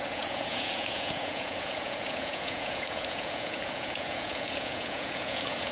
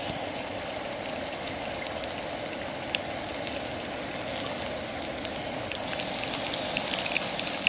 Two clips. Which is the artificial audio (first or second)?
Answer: first